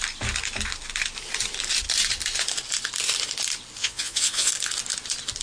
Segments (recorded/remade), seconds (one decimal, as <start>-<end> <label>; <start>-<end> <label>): 0.0-3.8 recorded; 3.8-4.5 remade; 4.5-5.4 recorded

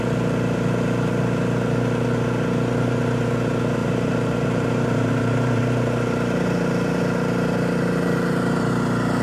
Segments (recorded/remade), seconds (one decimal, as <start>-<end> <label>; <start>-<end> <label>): 0.0-3.8 recorded; 3.8-5.6 remade; 5.6-9.2 recorded

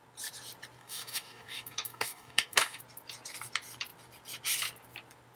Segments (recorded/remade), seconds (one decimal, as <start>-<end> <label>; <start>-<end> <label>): 0.0-0.8 recorded; 0.8-2.8 remade; 2.8-5.4 recorded

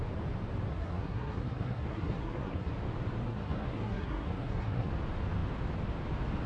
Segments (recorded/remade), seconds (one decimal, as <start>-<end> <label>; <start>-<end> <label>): 0.0-0.7 recorded; 0.7-2.7 remade; 2.7-3.2 recorded; 3.2-4.9 remade; 4.9-6.5 recorded

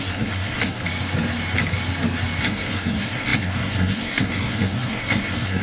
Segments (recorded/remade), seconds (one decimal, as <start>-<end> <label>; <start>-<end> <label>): 0.0-0.8 remade; 0.8-2.4 recorded; 2.4-5.6 remade

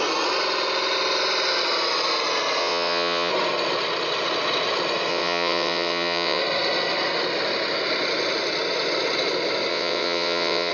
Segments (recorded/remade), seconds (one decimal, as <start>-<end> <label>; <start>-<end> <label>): 0.0-2.6 recorded; 2.6-3.3 remade; 3.3-5.1 recorded; 5.1-6.4 remade; 6.4-9.7 recorded; 9.7-10.7 remade

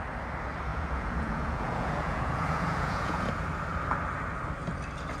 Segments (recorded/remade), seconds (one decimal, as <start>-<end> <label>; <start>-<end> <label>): 0.0-0.7 recorded; 0.7-3.3 remade; 3.3-5.2 recorded

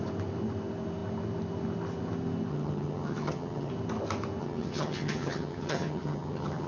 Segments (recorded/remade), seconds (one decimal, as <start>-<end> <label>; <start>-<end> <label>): 0.0-2.5 recorded; 2.5-3.7 remade; 3.7-4.4 recorded; 4.4-6.7 remade